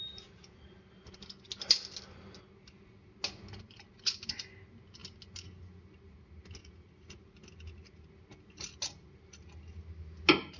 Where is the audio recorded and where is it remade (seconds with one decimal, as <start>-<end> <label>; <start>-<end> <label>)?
0.0-6.6 recorded; 6.6-7.2 remade; 7.2-10.6 recorded